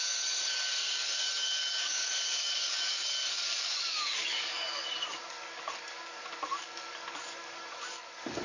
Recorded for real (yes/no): no